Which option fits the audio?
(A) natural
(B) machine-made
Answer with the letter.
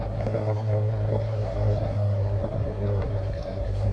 B